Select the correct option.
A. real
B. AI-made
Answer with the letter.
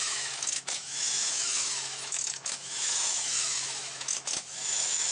B